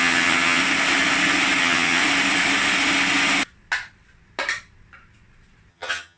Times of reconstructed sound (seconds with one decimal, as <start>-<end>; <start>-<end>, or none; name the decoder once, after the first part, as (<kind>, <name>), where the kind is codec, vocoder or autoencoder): 0.0-0.6 (vocoder, HiFi-GAN); 1.6-2.0; 5.7-6.2

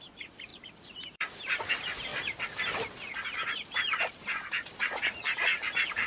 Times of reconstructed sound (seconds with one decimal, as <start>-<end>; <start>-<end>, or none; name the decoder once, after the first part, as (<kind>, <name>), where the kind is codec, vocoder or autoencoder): 0.0-2.1 (vocoder, BigVGAN v2); 4.2-6.1

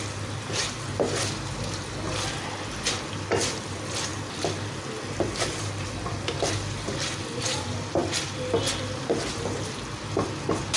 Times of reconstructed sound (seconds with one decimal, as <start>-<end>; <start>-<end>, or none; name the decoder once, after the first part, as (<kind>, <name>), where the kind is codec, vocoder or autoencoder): none